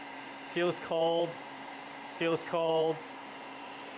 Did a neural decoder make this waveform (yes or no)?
yes